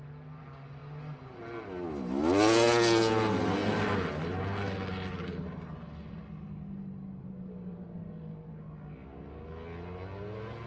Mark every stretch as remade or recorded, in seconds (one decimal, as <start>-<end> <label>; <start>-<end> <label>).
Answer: 0.0-10.7 recorded